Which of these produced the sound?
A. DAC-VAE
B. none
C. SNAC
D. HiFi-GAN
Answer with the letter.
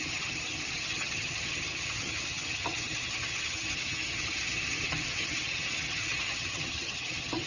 D